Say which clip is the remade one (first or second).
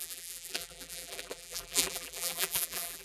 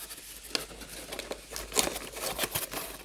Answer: first